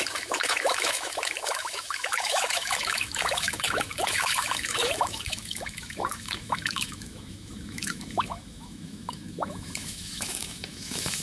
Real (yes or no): no